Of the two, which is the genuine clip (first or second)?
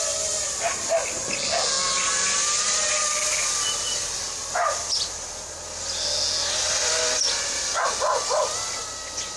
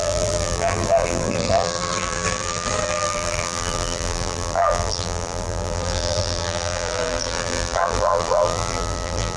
first